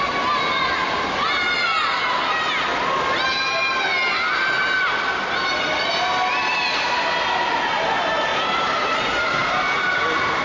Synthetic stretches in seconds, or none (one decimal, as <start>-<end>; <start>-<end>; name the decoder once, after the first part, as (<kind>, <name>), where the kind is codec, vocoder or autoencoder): none